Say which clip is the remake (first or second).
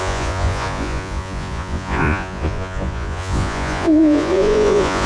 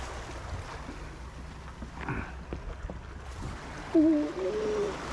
first